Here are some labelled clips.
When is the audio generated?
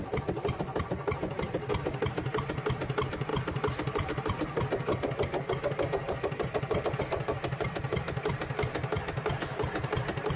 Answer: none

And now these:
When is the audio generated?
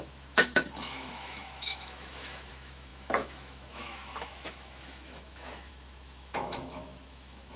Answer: 0.0-7.6 (autoencoder, DAC-VAE)